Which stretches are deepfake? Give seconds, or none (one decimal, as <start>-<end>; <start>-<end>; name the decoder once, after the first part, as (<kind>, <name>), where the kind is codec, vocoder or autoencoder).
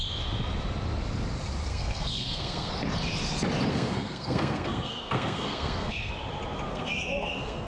1.7-2.7 (codec, SNAC); 3.7-6.1; 6.7-7.7